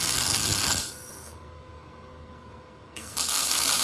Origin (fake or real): fake